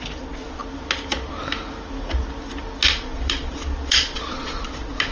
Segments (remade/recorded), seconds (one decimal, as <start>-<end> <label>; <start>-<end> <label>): 0.0-0.6 remade; 0.6-2.9 recorded; 2.9-5.1 remade